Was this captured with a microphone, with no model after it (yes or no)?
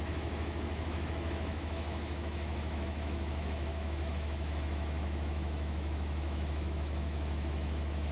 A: no